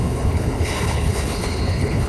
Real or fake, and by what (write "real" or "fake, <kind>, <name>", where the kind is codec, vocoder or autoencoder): fake, codec, HILCodec